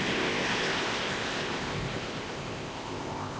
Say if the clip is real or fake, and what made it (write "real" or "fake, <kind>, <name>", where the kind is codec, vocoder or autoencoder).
fake, codec, ZipCodec